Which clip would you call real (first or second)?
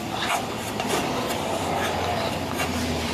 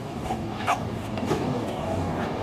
first